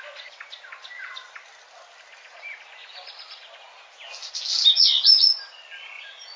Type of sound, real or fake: real